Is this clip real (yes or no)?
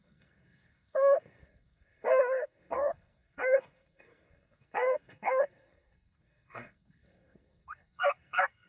no